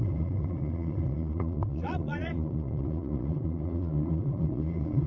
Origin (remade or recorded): remade